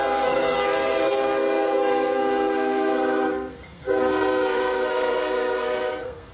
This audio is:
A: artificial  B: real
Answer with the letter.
A